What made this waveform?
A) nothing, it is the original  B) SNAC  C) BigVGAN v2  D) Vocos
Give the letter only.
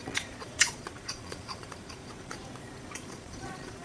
D